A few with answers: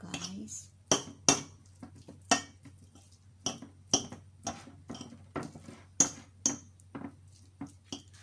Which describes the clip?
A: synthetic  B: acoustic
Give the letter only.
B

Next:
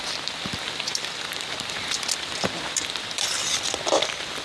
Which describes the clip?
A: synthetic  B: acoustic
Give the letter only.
A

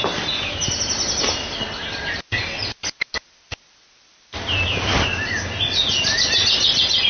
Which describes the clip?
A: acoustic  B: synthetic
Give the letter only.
A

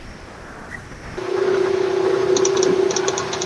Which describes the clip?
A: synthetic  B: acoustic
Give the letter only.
A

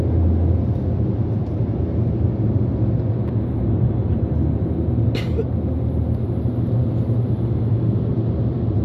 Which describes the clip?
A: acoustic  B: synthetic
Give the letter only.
A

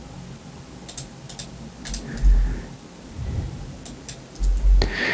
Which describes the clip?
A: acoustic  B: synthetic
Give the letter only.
A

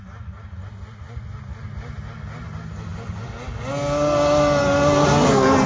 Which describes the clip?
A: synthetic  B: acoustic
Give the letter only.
B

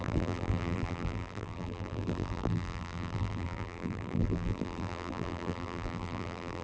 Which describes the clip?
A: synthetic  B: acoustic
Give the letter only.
A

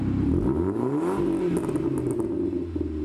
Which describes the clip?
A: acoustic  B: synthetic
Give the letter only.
A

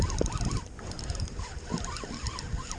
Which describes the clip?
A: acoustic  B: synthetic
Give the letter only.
B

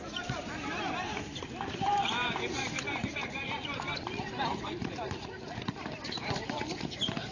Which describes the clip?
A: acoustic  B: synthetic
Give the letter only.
B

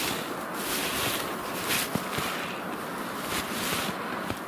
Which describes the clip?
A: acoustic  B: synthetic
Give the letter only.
A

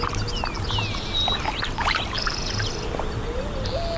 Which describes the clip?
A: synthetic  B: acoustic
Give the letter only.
B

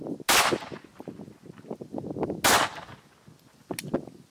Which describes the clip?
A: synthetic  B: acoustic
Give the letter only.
B